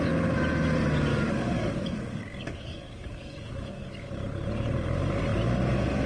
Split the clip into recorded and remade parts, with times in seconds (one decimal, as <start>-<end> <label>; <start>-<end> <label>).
0.0-1.1 recorded; 1.1-4.1 remade; 4.1-6.1 recorded